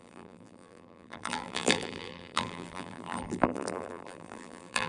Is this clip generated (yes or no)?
yes